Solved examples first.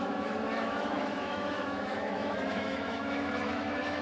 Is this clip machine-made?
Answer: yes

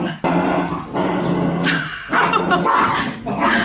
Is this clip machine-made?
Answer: no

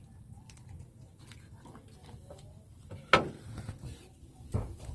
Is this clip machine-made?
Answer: no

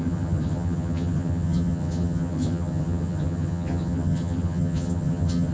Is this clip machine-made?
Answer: yes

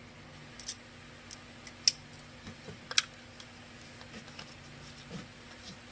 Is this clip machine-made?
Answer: no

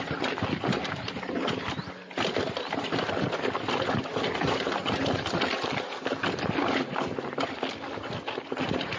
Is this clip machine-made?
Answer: no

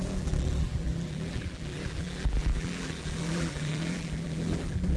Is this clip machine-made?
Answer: yes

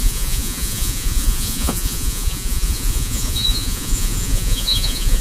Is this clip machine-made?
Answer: yes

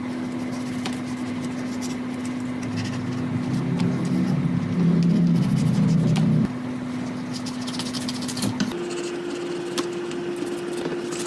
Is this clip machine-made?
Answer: no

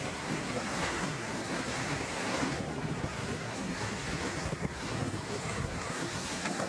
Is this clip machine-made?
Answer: yes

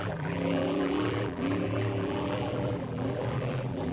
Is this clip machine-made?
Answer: yes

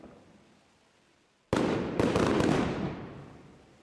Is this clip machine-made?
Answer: no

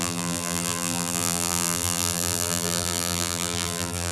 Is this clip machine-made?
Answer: yes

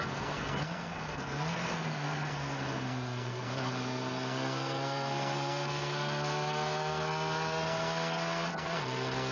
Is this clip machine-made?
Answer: yes